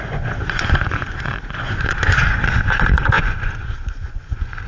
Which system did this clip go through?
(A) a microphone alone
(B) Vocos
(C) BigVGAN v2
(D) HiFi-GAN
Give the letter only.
B